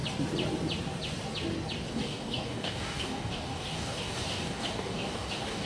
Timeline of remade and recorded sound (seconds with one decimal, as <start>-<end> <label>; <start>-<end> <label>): 0.0-1.9 recorded; 1.9-5.7 remade